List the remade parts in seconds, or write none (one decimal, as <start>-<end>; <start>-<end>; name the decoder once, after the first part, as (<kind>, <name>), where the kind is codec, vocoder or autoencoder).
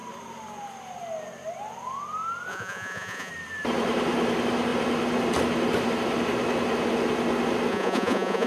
2.5-3.3 (vocoder, Vocos); 7.7-8.5